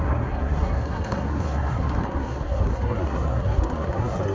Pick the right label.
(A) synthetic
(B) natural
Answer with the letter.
A